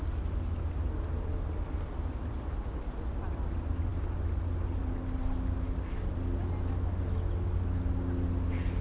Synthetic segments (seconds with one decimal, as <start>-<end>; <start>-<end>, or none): none

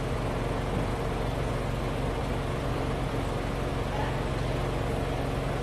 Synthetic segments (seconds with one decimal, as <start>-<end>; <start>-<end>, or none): 0.9-1.5; 2.2-3.1

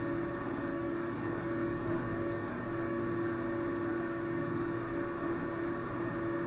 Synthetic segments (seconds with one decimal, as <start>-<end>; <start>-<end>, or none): 0.7-3.0; 3.9-4.8

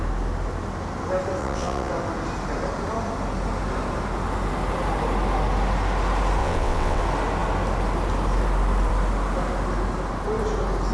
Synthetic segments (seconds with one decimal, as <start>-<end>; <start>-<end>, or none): 1.4-1.9; 6.4-7.0

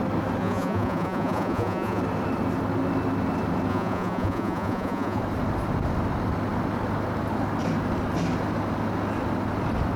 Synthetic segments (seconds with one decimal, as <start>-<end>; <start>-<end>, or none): 0.4-2.0; 3.7-5.2

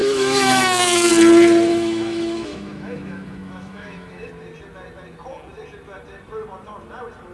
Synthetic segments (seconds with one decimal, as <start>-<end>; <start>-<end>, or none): 0.0-1.1; 1.7-4.3

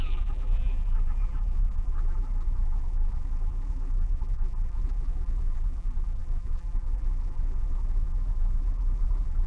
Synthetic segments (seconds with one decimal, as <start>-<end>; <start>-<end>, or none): 0.0-9.5

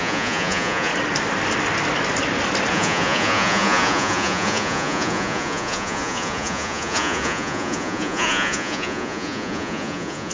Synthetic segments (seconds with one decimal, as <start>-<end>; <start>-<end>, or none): 0.0-0.9; 2.7-10.3